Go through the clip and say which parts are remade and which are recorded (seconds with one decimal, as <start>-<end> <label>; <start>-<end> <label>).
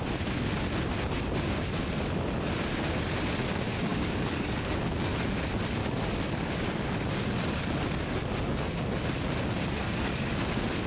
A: 0.0-3.9 recorded; 3.9-4.8 remade; 4.8-5.8 recorded; 5.8-6.5 remade; 6.5-9.8 recorded; 9.8-10.3 remade; 10.3-10.9 recorded